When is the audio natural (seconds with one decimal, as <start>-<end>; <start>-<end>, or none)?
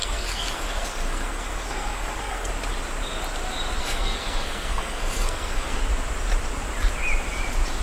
2.5-3.8; 5.8-7.8